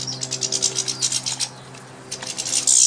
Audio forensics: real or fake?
real